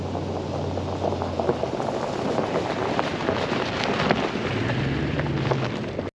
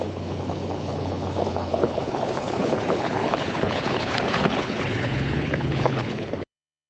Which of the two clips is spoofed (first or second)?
second